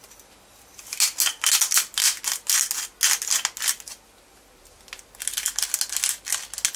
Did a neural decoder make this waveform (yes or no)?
no